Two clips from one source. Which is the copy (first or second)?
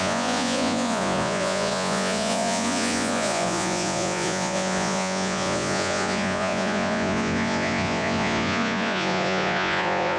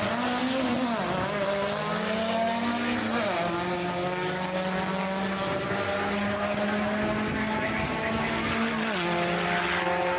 first